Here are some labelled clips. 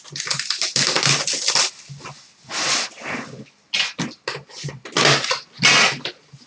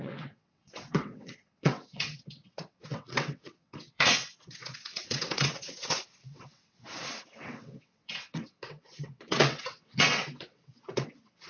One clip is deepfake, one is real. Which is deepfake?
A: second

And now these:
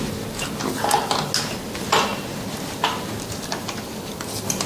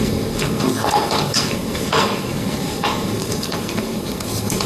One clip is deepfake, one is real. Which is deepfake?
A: second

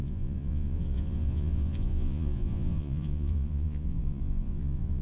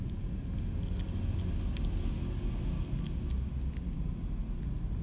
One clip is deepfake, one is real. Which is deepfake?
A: first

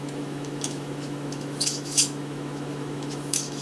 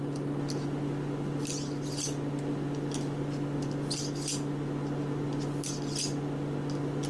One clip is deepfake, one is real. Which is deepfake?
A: first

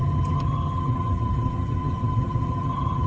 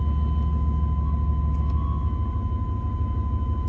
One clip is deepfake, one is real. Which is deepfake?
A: first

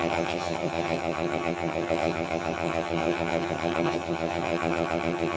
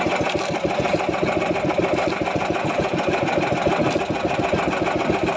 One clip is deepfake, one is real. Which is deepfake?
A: first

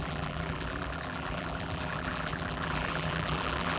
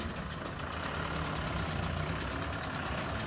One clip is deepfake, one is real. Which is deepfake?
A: first